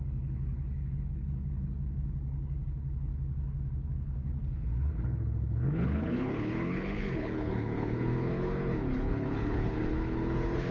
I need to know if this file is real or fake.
fake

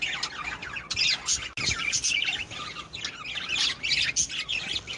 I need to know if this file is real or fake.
real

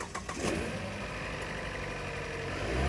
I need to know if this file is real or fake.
real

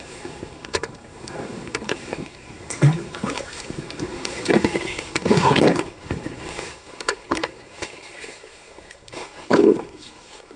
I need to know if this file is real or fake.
fake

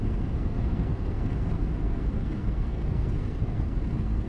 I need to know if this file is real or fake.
fake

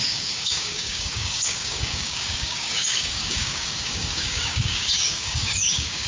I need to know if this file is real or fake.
fake